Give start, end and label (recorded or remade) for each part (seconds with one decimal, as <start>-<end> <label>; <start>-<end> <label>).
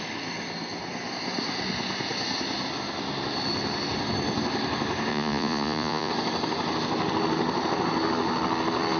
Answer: 0.0-5.1 recorded; 5.1-6.1 remade; 6.1-9.0 recorded